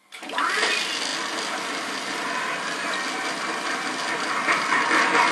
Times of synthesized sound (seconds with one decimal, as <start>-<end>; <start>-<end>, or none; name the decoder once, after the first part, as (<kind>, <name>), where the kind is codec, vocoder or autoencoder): none